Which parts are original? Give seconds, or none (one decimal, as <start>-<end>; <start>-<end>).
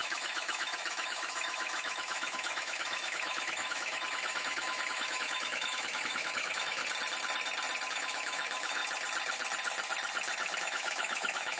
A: 6.8-7.9; 8.8-10.6